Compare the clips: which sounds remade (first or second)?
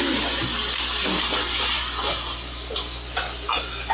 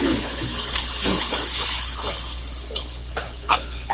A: second